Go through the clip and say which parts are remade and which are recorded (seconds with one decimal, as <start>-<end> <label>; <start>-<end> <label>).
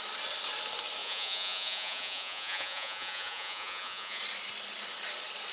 0.0-1.0 recorded; 1.0-4.2 remade; 4.2-5.5 recorded